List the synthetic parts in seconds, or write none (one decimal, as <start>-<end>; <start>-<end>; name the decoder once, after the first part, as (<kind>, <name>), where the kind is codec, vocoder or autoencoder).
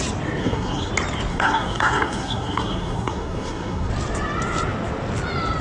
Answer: 0.4-0.9 (codec, SNAC); 1.3-3.9